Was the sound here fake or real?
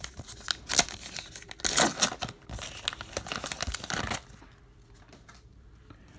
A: real